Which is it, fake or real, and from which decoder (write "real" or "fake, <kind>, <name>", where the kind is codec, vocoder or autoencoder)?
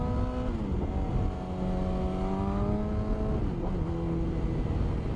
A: real